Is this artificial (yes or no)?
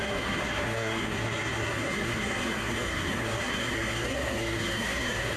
yes